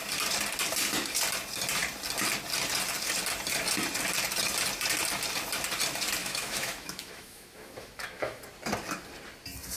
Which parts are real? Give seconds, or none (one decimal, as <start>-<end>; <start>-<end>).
0.0-6.2; 8.4-9.8